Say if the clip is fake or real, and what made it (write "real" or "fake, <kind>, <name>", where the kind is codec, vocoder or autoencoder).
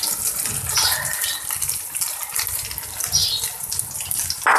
real